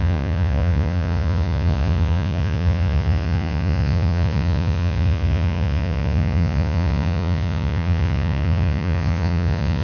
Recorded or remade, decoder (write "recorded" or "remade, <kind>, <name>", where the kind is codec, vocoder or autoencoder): remade, vocoder, Vocos